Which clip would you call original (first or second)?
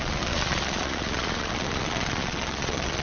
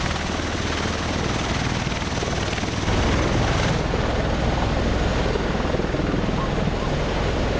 second